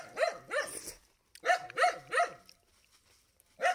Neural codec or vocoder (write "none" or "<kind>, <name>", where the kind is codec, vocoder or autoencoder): none